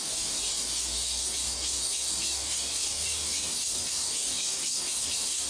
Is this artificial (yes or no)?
yes